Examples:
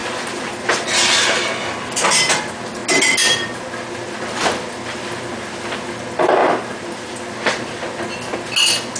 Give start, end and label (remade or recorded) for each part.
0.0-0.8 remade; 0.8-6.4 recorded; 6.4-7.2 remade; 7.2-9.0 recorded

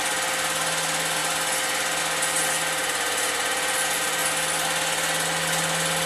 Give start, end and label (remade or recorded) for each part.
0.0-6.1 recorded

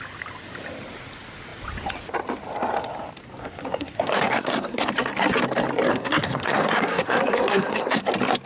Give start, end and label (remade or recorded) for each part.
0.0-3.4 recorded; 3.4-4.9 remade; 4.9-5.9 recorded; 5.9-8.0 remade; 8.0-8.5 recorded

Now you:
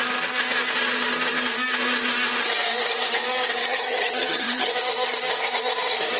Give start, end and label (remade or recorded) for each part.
0.0-3.6 recorded; 3.6-4.7 remade; 4.7-6.2 recorded

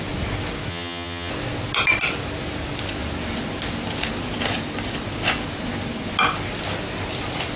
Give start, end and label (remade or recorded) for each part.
0.0-0.7 recorded; 0.7-1.3 remade; 1.3-7.6 recorded

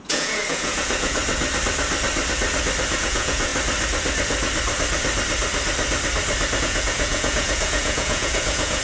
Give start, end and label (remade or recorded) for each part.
0.0-1.2 remade; 1.2-3.0 recorded; 3.0-3.5 remade; 3.5-6.6 recorded; 6.6-8.8 remade

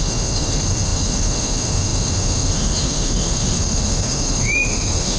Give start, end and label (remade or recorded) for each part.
0.0-5.2 remade

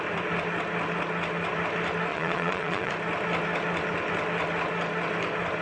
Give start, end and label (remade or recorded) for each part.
0.0-2.1 recorded; 2.1-2.9 remade; 2.9-5.6 recorded